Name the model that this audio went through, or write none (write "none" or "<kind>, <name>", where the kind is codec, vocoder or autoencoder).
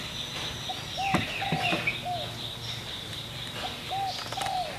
none